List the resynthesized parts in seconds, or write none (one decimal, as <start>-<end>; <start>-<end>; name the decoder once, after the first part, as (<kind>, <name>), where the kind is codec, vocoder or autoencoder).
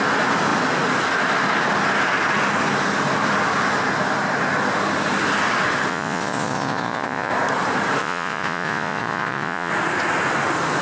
5.9-7.3 (vocoder, Vocos); 8.0-9.7